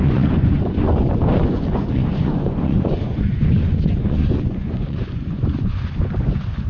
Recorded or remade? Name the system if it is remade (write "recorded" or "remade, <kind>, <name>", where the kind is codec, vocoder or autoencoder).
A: remade, vocoder, Vocos